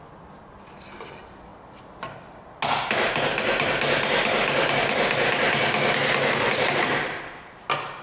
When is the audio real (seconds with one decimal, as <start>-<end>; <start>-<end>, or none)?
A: 0.0-8.0